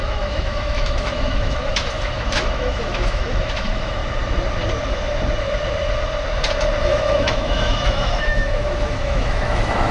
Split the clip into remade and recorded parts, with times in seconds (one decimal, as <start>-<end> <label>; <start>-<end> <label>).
0.0-4.0 remade; 4.0-6.8 recorded; 6.8-9.9 remade